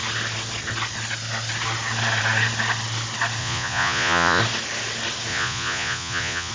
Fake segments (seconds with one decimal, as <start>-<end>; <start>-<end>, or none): 3.4-4.4; 5.3-6.5